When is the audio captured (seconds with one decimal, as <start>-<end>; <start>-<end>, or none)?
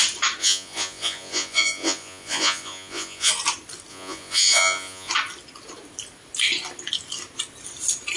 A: 0.0-0.4; 3.3-3.9; 5.1-8.2